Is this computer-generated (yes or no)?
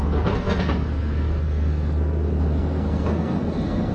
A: yes